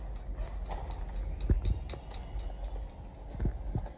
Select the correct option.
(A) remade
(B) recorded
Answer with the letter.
B